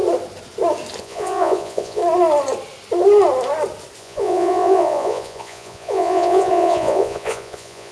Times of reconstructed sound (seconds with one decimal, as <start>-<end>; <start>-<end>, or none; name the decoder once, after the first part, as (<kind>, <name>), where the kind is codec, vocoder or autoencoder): 1.0-2.0 (vocoder, Vocos); 4.0-7.9